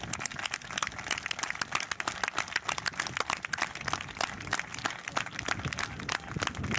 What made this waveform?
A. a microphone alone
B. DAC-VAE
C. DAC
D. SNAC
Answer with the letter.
A